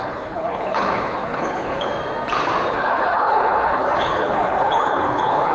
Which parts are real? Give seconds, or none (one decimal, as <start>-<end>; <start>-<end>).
1.9-2.7

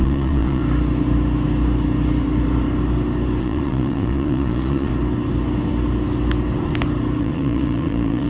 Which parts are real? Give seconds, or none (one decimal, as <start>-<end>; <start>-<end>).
0.6-3.4; 4.9-7.2

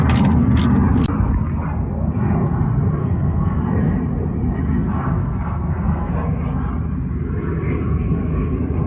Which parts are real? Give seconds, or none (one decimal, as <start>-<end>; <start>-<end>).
0.0-3.0; 3.6-5.2; 6.1-8.9

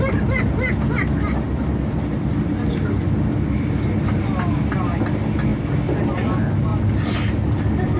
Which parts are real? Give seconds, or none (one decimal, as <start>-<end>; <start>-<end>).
0.0-8.0

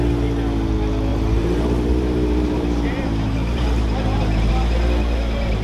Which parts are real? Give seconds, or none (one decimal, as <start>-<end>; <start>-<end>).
0.0-1.1; 4.5-5.6

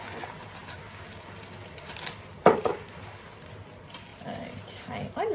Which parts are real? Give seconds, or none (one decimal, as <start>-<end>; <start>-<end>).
0.0-4.1; 4.7-5.3

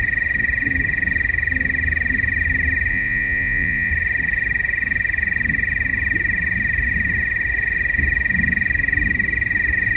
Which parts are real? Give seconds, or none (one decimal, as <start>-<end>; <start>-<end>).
0.0-2.9; 3.9-10.0

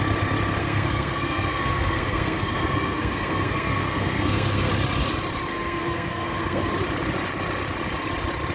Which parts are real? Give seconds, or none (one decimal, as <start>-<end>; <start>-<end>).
0.0-0.6; 4.7-5.5; 6.7-8.5